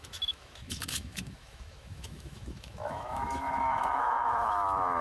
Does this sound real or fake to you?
fake